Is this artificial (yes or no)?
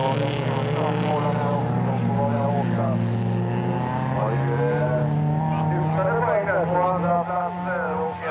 no